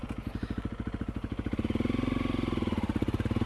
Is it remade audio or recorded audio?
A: recorded